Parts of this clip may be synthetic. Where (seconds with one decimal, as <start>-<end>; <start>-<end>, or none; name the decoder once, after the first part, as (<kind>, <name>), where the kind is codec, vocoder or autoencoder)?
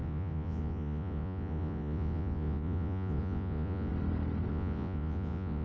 0.0-3.9 (vocoder, Vocos); 4.5-5.6